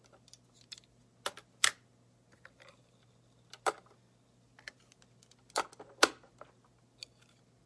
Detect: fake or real real